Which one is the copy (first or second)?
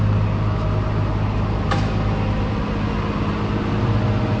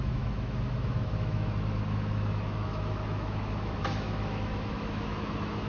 second